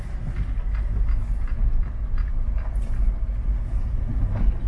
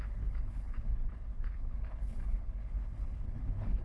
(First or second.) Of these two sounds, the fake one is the second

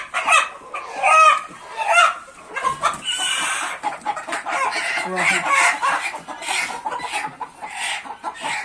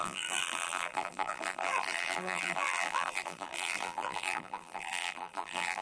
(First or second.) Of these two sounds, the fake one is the second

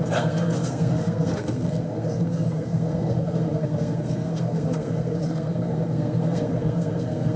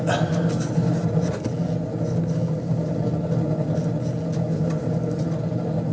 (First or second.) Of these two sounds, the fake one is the first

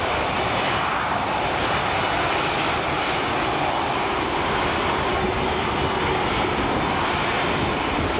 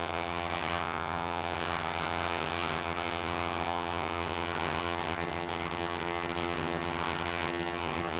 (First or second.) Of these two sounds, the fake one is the second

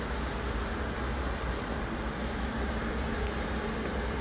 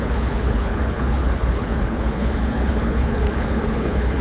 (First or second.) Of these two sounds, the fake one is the second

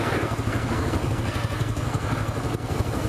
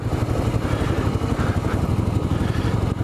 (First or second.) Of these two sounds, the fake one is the first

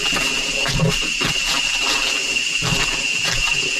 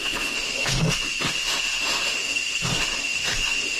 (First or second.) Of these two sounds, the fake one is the second